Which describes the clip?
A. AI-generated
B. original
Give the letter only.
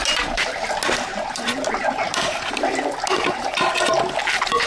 B